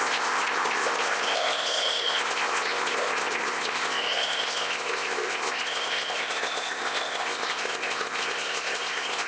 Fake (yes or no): yes